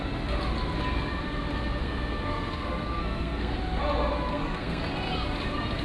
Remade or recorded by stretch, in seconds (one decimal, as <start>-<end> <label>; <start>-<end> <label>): 0.0-1.8 recorded; 1.8-3.6 remade; 3.6-4.3 recorded; 4.3-4.8 remade; 4.8-5.8 recorded